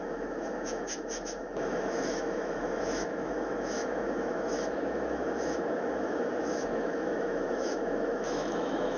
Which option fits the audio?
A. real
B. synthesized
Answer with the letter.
B